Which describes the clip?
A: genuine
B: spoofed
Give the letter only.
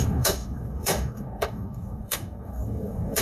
B